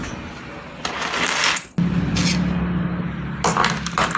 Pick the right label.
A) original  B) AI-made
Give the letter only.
A